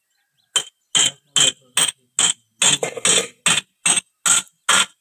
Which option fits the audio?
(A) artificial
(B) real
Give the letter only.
B